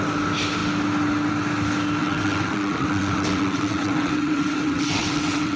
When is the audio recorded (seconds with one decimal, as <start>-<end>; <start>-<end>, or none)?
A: 0.0-2.0